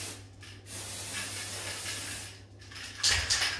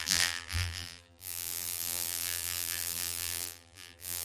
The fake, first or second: second